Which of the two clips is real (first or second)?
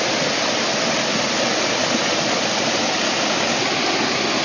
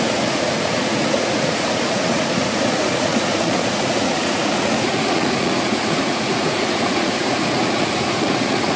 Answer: first